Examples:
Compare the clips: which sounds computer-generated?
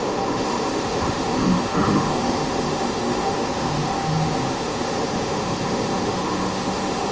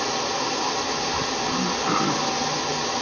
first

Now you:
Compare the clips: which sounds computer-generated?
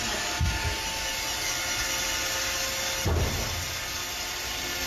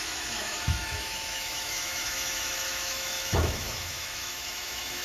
second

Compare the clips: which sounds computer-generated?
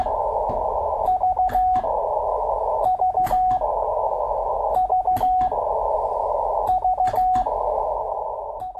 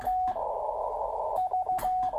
second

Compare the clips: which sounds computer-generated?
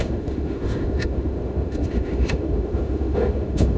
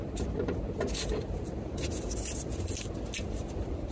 first